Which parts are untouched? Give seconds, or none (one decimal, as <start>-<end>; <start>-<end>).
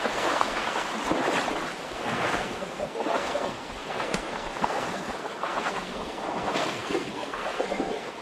0.9-1.8